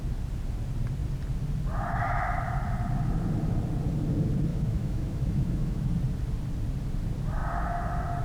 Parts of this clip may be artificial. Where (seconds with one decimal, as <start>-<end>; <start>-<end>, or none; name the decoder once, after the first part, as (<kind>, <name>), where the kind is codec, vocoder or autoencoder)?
4.5-5.9 (autoencoder, DAC-VAE)